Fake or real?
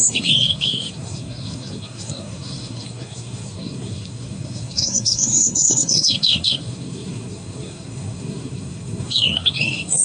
fake